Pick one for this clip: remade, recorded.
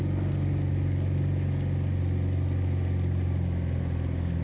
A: recorded